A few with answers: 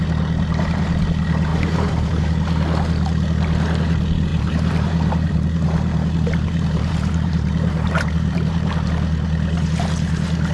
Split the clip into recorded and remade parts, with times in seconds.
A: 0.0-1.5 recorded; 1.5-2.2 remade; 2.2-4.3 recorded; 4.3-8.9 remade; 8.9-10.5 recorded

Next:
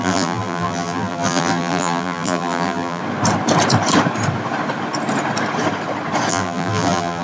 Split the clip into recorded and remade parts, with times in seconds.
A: 0.0-3.0 remade; 3.0-6.3 recorded; 6.3-7.2 remade

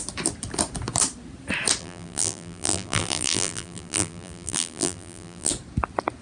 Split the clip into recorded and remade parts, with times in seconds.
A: 0.0-1.8 recorded; 1.8-5.5 remade; 5.5-6.2 recorded

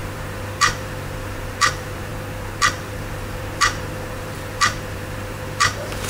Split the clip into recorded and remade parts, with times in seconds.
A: 0.0-2.1 remade; 2.1-2.7 recorded; 2.7-6.1 remade

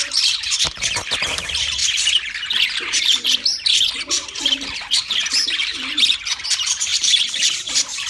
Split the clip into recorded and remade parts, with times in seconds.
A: 0.0-8.1 remade

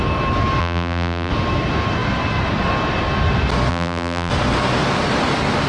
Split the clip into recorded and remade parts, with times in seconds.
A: 0.0-0.6 recorded; 0.6-1.3 remade; 1.3-3.7 recorded; 3.7-4.3 remade; 4.3-5.7 recorded

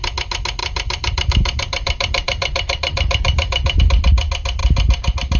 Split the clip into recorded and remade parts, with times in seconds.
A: 0.0-0.6 recorded; 0.6-3.8 remade; 3.8-5.4 recorded